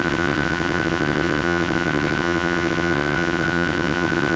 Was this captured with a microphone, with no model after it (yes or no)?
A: no